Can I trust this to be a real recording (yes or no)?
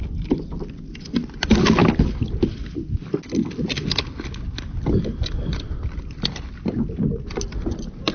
yes